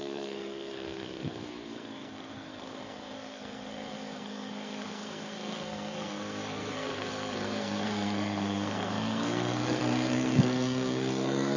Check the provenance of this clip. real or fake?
fake